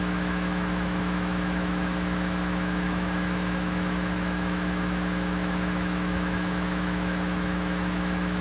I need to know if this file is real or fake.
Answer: fake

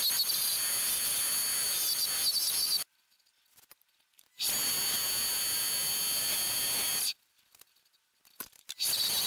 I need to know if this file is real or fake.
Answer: real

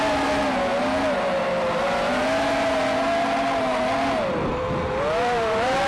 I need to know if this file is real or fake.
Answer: real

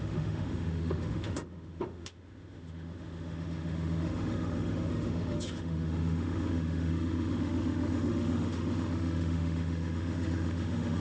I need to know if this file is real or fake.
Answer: fake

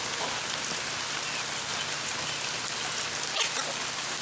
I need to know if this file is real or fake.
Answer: real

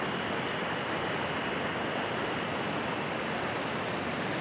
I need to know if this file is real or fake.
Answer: real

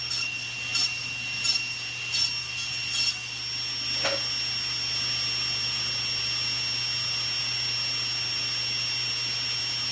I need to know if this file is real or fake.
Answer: real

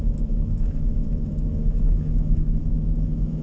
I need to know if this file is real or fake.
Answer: fake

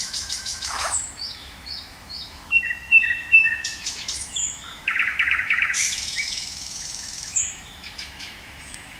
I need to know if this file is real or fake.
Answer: fake